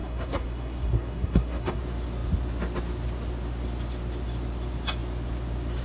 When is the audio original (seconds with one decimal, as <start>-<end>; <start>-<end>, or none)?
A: 1.8-5.8

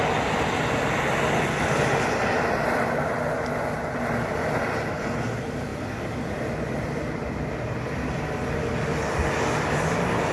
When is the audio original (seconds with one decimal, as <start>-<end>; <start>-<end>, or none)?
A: 0.0-10.3

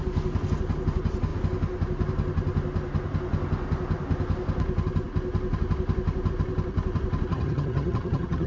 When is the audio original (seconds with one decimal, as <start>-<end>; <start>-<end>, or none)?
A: 0.0-7.3